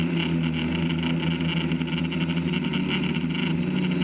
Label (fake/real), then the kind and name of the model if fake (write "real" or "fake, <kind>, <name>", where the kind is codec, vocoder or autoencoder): real